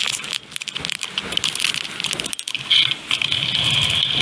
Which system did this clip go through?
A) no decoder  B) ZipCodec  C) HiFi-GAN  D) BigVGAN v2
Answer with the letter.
A